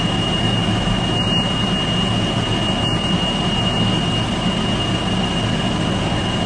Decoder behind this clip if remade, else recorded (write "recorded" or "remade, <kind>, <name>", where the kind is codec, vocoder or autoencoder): recorded